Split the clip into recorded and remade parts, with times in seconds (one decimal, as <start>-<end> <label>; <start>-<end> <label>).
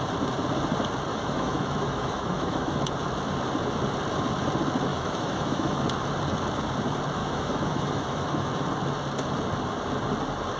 0.0-1.1 recorded; 1.1-2.8 remade; 2.8-4.9 recorded; 4.9-5.8 remade; 5.8-7.2 recorded; 7.2-8.5 remade; 8.5-10.6 recorded